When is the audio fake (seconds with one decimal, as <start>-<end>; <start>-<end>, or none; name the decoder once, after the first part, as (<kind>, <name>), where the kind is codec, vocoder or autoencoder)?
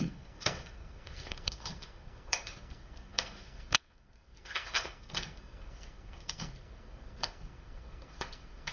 0.0-8.7 (codec, SNAC)